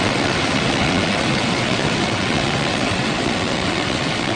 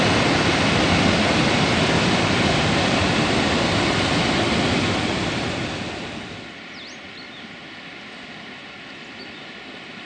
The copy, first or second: first